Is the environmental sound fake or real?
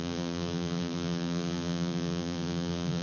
fake